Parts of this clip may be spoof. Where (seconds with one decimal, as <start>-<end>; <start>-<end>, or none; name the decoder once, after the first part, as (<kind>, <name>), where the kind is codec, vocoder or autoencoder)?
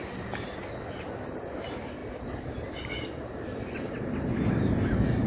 none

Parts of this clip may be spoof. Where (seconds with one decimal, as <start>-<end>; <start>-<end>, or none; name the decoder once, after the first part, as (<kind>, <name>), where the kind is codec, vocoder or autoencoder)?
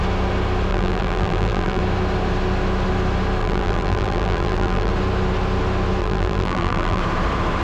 0.7-1.8 (vocoder, BigVGAN v2); 3.4-4.9; 6.0-7.0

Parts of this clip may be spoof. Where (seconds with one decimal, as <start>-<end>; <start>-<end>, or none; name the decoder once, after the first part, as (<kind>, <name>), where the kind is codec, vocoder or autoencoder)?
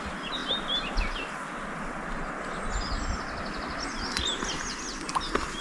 none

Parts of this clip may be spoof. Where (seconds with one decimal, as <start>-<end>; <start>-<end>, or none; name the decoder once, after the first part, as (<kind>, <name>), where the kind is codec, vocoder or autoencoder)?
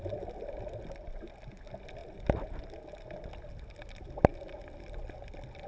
none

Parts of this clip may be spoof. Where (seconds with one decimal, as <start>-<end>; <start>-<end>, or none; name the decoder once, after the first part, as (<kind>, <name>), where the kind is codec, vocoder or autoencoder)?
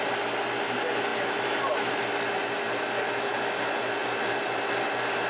1.1-2.0 (vocoder, BigVGAN v2); 4.0-5.3